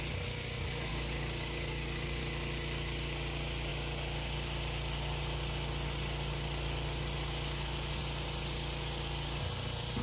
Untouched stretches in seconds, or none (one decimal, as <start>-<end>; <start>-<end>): 0.0-0.9; 2.2-10.0